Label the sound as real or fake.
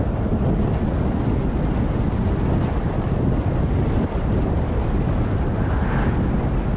real